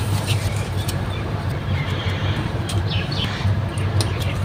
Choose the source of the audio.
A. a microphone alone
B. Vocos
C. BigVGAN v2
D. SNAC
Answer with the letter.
C